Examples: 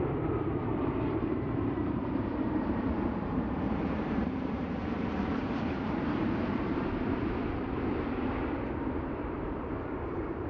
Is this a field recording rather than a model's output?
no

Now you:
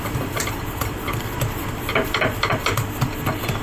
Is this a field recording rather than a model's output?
no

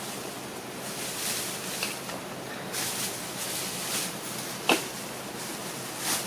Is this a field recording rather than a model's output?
yes